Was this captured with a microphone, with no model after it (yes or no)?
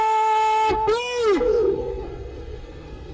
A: no